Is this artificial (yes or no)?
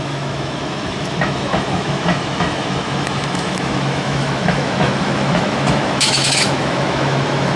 yes